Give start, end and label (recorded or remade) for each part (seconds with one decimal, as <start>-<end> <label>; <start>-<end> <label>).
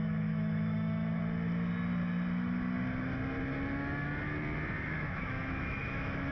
0.0-1.2 remade; 1.2-4.8 recorded; 4.8-6.3 remade